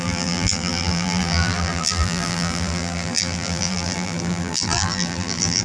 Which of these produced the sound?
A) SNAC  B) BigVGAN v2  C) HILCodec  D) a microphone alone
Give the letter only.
B